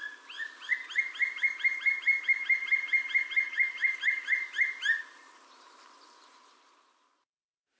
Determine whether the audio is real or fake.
real